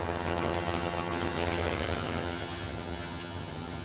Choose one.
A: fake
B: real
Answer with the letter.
A